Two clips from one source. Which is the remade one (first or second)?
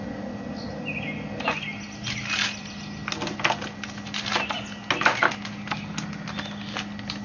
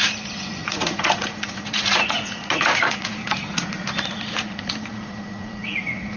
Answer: second